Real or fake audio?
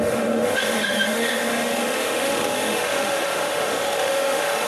fake